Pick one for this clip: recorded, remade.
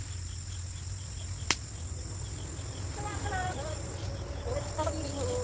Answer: recorded